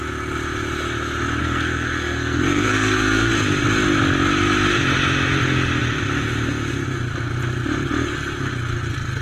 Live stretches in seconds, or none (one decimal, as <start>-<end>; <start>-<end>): 0.0-1.4; 3.3-9.2